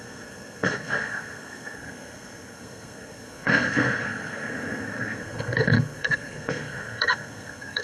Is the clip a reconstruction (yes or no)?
yes